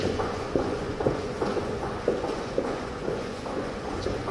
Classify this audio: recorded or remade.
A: remade